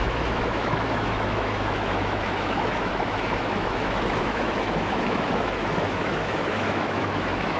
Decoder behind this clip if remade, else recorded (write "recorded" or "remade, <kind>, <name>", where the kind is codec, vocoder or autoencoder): remade, autoencoder, DAC-VAE